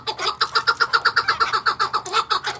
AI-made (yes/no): no